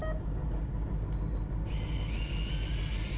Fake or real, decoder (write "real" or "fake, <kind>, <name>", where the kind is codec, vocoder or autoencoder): real